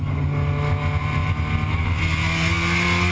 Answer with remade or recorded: recorded